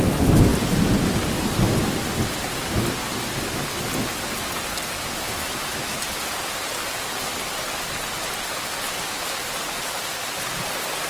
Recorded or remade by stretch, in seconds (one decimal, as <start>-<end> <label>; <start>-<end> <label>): 0.0-0.5 remade; 0.5-5.1 recorded; 5.1-5.9 remade; 5.9-11.1 recorded